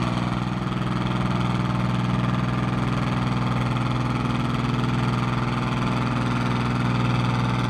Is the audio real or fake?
real